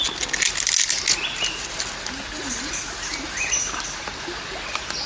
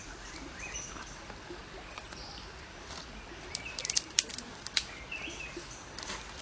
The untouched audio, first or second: first